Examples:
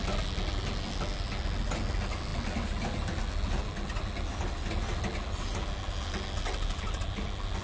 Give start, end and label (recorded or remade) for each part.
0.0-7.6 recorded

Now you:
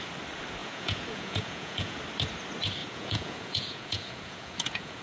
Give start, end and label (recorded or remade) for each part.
0.0-0.6 recorded; 0.6-2.0 remade; 2.0-2.8 recorded; 2.8-5.0 remade

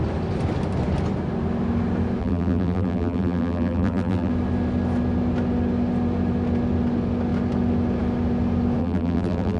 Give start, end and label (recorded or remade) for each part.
0.0-2.2 recorded; 2.2-4.3 remade; 4.3-8.8 recorded; 8.8-9.6 remade

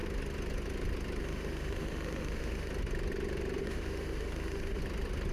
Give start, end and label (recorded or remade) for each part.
0.0-1.2 recorded; 1.2-2.7 remade; 2.7-3.6 recorded; 3.6-4.8 remade; 4.8-5.3 recorded

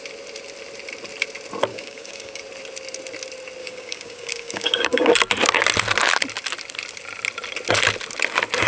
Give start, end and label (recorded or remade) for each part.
0.0-1.7 recorded; 1.7-2.4 remade; 2.4-3.6 recorded; 3.6-5.1 remade; 5.1-8.7 recorded

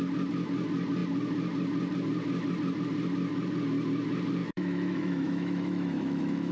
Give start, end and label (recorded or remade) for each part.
0.0-4.4 recorded; 4.4-6.5 remade

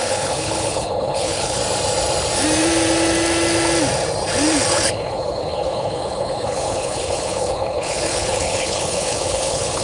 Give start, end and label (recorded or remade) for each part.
0.0-1.6 remade; 1.6-4.7 recorded; 4.7-9.8 remade